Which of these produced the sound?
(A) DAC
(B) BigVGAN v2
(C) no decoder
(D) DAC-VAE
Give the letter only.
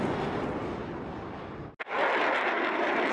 C